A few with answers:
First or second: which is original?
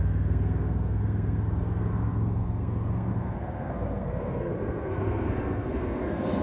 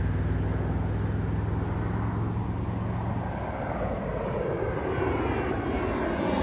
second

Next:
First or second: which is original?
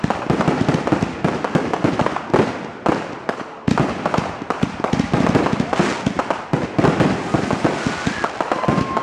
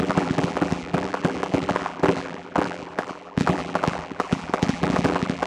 first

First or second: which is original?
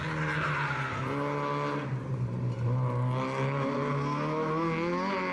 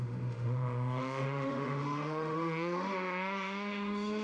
first